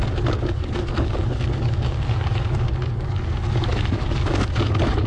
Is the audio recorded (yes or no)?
no